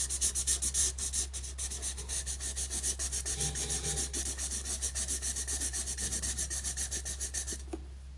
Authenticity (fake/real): real